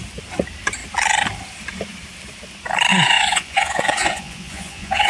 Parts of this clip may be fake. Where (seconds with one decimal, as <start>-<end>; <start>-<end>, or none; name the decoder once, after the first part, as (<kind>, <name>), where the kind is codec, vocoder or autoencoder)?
2.9-5.1 (vocoder, Vocos)